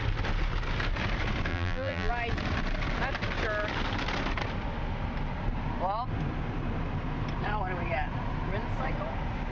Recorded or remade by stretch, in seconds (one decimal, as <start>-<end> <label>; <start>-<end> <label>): 0.0-1.5 recorded; 1.5-2.1 remade; 2.1-9.5 recorded